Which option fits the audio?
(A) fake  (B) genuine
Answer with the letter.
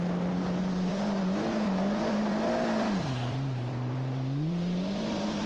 A